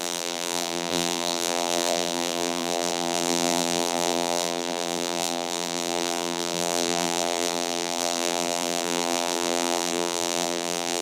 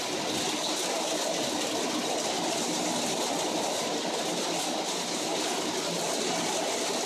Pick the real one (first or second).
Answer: second